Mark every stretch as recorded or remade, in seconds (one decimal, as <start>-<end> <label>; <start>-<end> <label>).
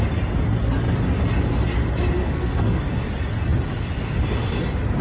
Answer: 0.0-2.2 recorded; 2.2-2.8 remade; 2.8-5.0 recorded